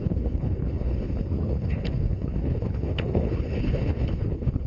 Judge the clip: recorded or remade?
remade